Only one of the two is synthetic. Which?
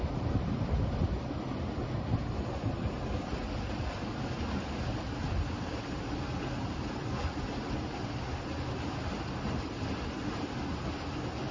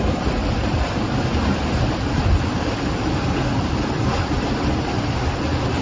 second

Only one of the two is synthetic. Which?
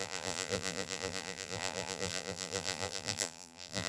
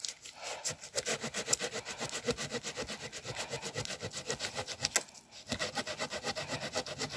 first